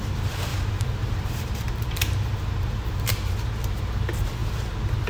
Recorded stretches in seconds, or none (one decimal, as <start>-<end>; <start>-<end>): 0.0-0.5; 3.5-5.1